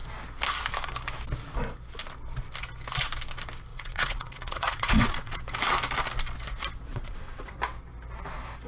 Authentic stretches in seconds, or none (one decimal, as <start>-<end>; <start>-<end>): 0.0-3.7; 5.4-6.9; 7.6-8.7